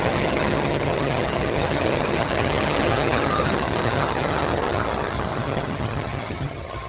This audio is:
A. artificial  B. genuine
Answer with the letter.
A